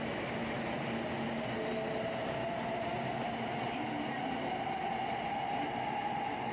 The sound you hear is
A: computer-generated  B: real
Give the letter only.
B